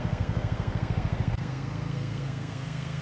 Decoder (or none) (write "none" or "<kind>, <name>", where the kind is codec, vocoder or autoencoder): codec, SNAC